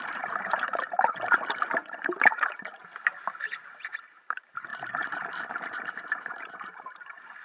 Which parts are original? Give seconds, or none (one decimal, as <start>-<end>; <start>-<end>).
2.8-3.4